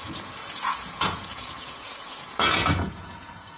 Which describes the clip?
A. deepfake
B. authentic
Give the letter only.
A